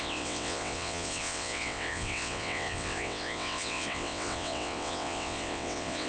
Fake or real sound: fake